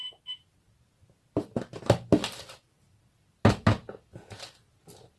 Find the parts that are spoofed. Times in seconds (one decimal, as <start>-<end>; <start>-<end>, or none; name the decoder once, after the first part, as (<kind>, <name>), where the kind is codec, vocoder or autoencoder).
none